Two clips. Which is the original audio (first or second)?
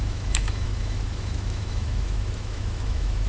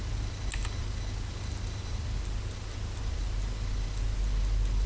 second